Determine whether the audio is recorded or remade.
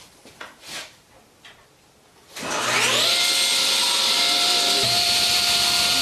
remade